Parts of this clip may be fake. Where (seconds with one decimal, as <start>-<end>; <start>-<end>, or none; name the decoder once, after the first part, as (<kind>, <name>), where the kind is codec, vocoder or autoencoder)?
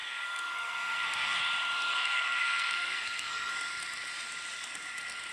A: 0.0-1.4 (codec, SNAC); 1.9-3.5